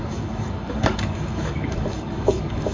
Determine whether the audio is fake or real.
fake